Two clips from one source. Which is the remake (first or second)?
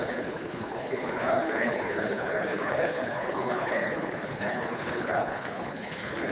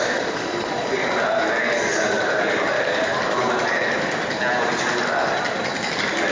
first